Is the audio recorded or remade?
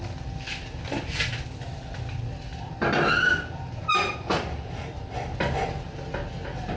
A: recorded